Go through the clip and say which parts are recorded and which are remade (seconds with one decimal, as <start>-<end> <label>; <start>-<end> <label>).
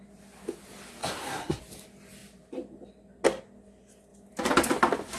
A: 0.0-1.0 recorded; 1.0-1.6 remade; 1.6-5.2 recorded